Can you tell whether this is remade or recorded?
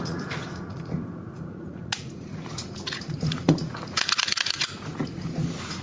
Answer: remade